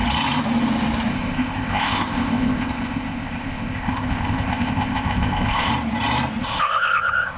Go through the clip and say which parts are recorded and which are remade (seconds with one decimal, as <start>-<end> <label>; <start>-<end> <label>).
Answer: 0.0-1.1 recorded; 1.1-5.7 remade; 5.7-6.4 recorded; 6.4-7.4 remade